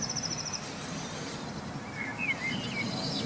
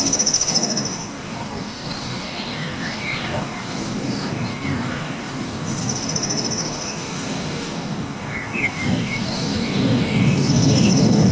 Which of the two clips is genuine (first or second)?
first